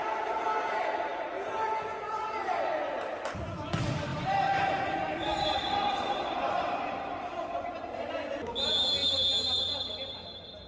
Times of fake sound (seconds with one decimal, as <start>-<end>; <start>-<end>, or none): 4.1-8.1